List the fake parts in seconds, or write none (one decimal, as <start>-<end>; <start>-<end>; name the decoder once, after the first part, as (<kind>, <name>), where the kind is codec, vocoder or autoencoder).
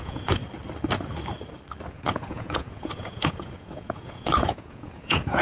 0.0-0.4 (vocoder, Vocos); 1.9-5.4